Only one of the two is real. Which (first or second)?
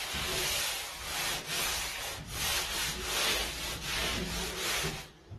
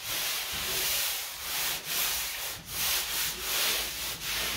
first